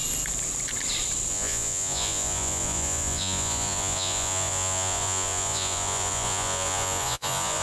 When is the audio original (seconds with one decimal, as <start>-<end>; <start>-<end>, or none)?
0.0-1.3